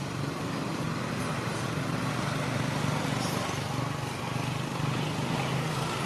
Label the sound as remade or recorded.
recorded